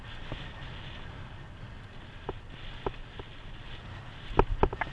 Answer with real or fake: real